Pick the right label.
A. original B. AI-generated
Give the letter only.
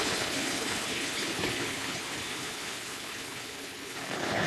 B